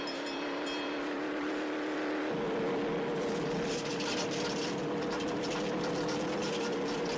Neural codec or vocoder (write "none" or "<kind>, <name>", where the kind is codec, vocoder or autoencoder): none